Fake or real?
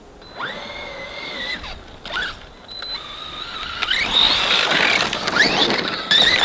real